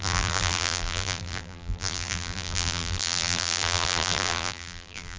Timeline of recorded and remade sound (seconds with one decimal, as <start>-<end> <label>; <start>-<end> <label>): 0.0-5.2 remade